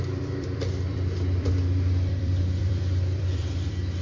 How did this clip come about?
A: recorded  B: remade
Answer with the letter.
B